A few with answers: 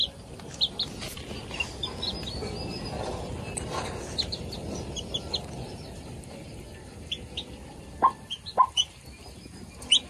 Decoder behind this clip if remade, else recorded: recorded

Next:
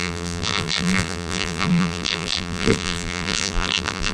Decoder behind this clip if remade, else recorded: remade, vocoder, BigVGAN v2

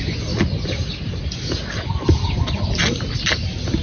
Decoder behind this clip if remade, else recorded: recorded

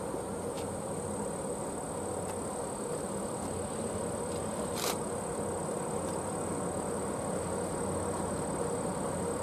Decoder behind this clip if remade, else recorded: recorded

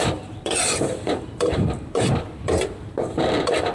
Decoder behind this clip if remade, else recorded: remade, vocoder, BigVGAN v2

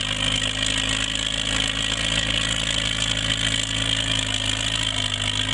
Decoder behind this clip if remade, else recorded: recorded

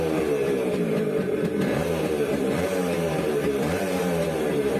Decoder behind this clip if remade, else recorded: remade, vocoder, BigVGAN v2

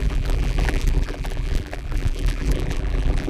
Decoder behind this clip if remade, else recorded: remade, vocoder, BigVGAN v2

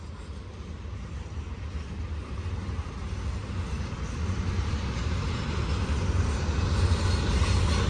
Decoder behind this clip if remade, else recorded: recorded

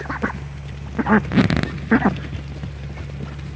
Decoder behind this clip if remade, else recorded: recorded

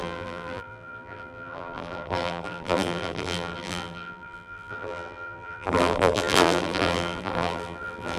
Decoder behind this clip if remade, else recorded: remade, vocoder, BigVGAN v2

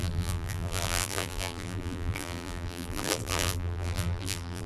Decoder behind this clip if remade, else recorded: remade, vocoder, BigVGAN v2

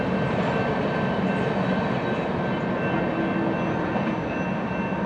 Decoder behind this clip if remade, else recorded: recorded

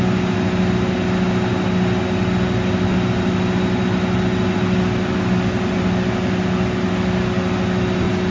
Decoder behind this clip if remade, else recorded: recorded